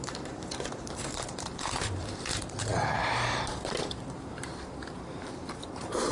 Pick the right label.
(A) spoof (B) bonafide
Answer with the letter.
A